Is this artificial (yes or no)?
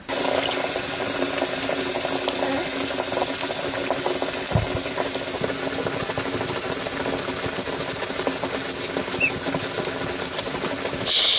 no